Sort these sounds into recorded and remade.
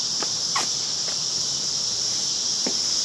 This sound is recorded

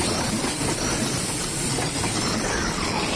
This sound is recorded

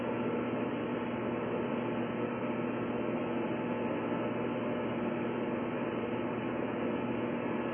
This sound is recorded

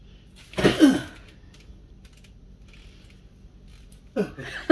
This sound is recorded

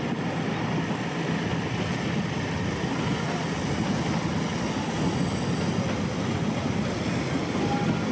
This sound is recorded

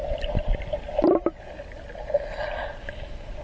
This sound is recorded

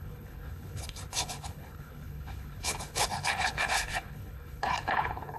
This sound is remade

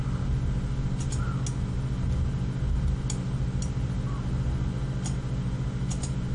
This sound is recorded